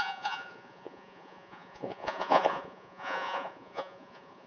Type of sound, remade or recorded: remade